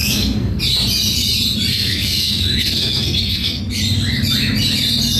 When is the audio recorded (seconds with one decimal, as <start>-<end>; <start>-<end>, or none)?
0.6-1.7; 3.6-5.2